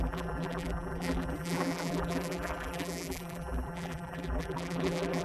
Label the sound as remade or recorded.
remade